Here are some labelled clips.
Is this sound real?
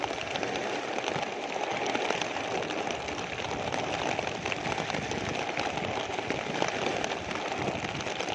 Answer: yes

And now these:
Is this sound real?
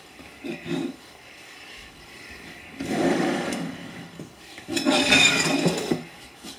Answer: no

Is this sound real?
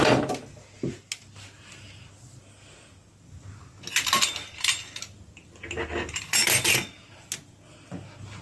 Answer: yes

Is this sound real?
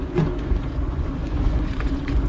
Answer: no